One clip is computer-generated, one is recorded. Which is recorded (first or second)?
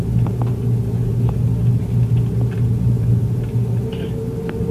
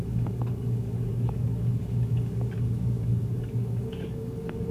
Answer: first